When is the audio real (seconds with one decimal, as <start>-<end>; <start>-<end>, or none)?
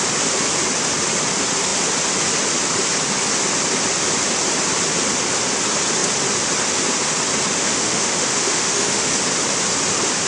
0.0-7.6; 9.1-10.3